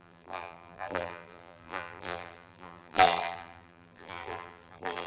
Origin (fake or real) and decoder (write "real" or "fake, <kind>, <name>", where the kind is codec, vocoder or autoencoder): fake, vocoder, BigVGAN v2